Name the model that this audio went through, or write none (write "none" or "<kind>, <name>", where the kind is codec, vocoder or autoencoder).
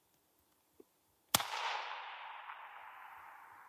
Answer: none